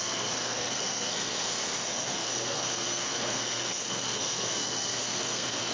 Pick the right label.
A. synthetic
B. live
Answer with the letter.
A